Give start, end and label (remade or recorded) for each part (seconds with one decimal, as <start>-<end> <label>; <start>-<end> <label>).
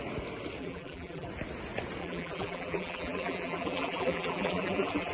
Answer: 0.0-0.6 recorded; 0.6-1.3 remade; 1.3-2.0 recorded; 2.0-5.1 remade